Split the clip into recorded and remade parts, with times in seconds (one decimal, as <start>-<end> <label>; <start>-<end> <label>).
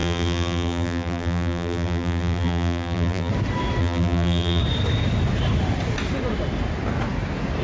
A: 0.0-3.3 remade; 3.3-3.8 recorded; 3.8-4.6 remade; 4.6-7.6 recorded